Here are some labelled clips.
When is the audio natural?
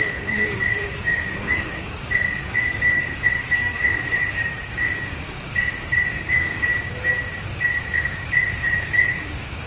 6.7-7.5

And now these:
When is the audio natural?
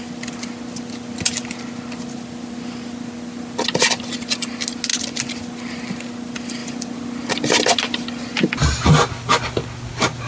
0.0-10.3